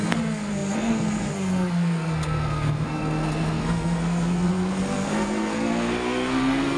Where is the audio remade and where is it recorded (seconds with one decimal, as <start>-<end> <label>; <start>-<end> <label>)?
0.0-6.8 remade

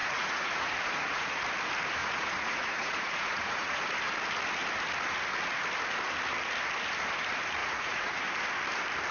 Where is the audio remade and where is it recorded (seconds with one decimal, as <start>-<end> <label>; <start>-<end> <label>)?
0.0-1.4 remade; 1.4-2.0 recorded; 2.0-3.8 remade; 3.8-7.6 recorded; 7.6-8.2 remade; 8.2-9.1 recorded

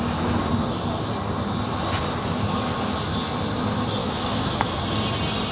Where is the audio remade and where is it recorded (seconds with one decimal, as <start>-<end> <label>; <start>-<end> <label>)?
0.0-4.0 recorded; 4.0-4.8 remade; 4.8-5.5 recorded

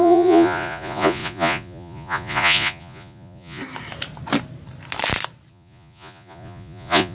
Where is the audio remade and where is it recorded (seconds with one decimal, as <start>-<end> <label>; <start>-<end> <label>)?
0.0-3.6 remade; 3.6-5.5 recorded; 5.5-7.1 remade

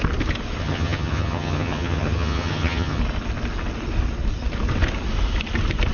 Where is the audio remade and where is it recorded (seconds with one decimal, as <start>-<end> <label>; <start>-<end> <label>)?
0.0-0.6 recorded; 0.6-3.0 remade; 3.0-5.9 recorded